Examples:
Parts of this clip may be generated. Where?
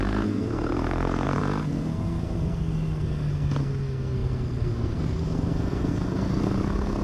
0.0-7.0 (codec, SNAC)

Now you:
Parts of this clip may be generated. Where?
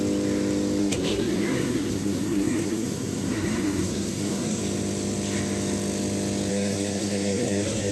0.8-4.6 (codec, SNAC); 6.5-7.9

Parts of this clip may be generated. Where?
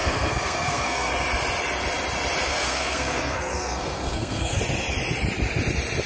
0.0-1.1 (codec, SNAC); 2.5-4.6